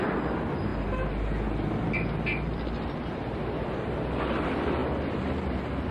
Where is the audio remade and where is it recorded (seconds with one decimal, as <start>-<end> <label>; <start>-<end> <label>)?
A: 0.0-5.9 recorded